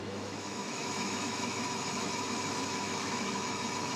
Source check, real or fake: fake